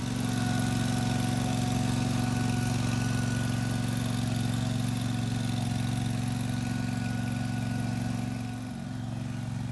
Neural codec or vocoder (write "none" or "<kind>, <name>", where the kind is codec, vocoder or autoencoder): none